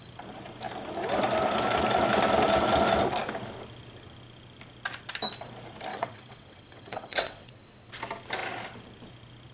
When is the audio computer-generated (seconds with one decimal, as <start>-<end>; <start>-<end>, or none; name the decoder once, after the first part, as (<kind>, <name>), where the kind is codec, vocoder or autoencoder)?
5.9-7.9 (vocoder, WaveNeXt)